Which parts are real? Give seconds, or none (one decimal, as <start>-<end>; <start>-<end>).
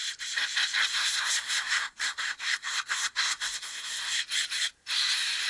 0.0-0.9; 4.2-5.5